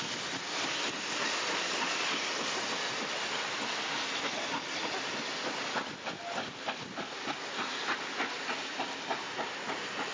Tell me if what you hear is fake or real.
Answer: real